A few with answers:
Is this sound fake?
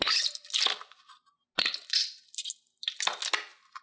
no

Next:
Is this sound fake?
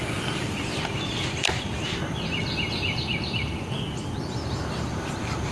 no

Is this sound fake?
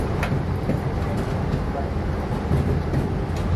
no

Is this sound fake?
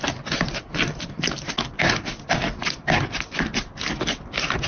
no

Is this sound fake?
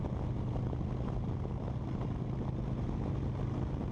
no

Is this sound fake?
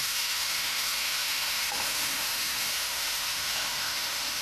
yes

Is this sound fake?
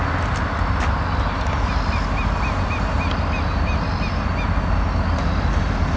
no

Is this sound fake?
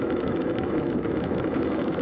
yes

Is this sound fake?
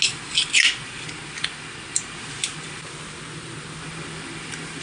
no